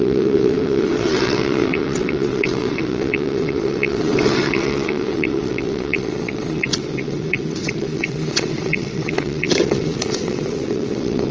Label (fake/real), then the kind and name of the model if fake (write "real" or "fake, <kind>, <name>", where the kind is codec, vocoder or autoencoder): fake, vocoder, WaveNeXt